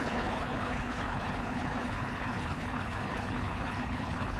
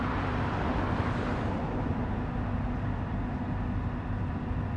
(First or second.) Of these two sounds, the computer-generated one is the first